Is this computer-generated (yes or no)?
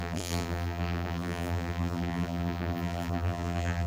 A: yes